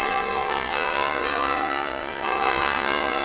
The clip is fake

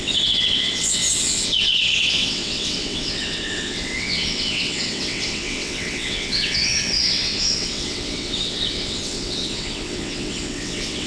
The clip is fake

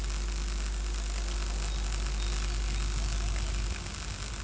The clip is real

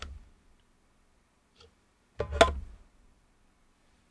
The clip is real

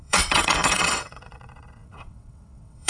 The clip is fake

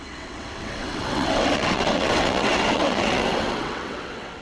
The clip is fake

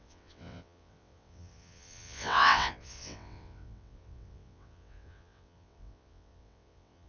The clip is fake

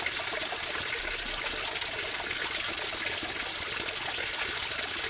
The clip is real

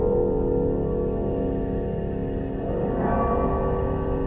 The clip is real